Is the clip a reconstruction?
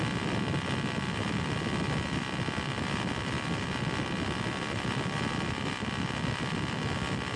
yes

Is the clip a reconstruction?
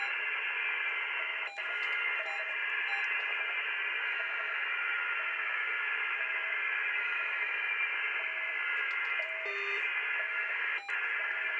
no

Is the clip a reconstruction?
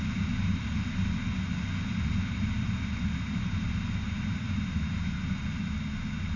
no